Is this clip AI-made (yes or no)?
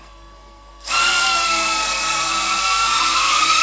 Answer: yes